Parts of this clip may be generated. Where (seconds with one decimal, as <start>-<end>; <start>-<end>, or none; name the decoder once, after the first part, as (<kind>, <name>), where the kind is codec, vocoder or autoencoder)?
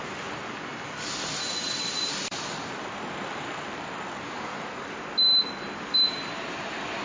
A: 1.4-2.1 (vocoder, WaveNeXt)